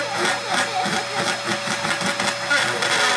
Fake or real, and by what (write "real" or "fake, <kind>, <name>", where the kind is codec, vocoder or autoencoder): real